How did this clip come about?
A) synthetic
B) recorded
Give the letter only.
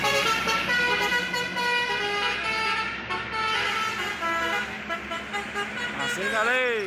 B